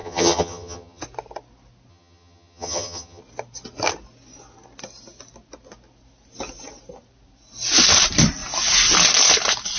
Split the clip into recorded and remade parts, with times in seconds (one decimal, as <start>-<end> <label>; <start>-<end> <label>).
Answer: 0.0-1.0 remade; 1.0-1.9 recorded; 1.9-3.2 remade; 3.2-9.8 recorded